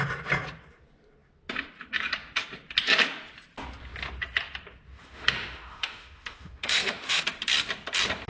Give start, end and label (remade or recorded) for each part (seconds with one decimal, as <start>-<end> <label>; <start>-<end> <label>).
0.0-4.9 recorded; 4.9-7.2 remade; 7.2-8.3 recorded